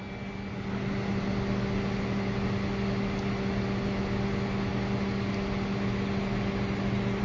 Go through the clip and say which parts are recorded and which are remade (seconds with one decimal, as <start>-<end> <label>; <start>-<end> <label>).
0.0-7.2 recorded